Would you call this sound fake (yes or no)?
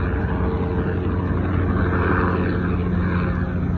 no